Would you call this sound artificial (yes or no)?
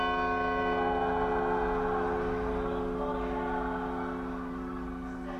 no